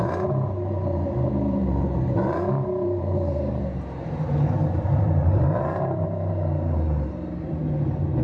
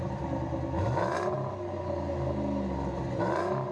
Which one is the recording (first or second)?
second